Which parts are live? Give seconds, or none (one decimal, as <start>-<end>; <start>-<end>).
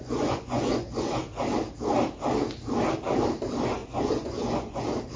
1.2-3.8; 4.8-5.2